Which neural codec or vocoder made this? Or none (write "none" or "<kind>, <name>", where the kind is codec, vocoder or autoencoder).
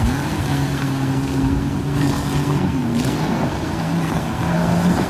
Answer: codec, SNAC